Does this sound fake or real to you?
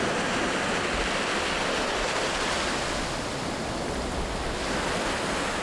real